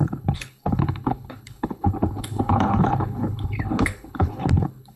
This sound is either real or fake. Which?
fake